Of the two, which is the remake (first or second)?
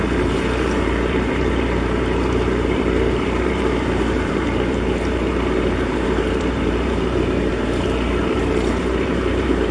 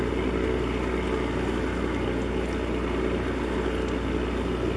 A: first